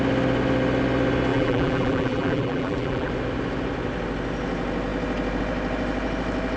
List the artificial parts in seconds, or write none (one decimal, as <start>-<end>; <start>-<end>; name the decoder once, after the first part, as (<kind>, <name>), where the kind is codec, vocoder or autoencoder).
1.3-3.1 (vocoder, BigVGAN v2)